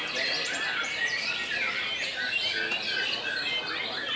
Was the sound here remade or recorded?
recorded